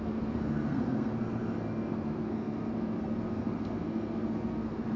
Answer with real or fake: fake